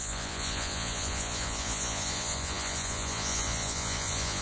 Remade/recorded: remade